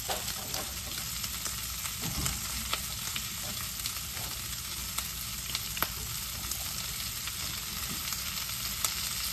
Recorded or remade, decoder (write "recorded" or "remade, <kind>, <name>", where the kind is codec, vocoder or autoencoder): recorded